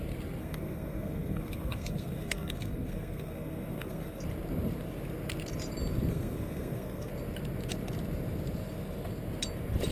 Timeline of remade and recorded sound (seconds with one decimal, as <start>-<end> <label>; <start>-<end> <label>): 0.0-0.4 recorded; 0.4-4.2 remade; 4.2-6.1 recorded; 6.1-7.1 remade; 7.1-9.9 recorded